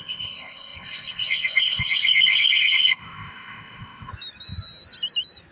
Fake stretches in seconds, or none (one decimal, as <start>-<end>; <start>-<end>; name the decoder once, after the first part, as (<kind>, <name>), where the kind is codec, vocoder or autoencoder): 0.0-4.1 (codec, ZipCodec)